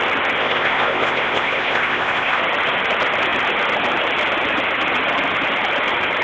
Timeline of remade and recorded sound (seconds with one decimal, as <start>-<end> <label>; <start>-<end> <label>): 0.0-0.4 recorded; 0.4-2.4 remade; 2.4-6.2 recorded